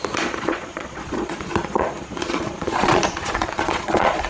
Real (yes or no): no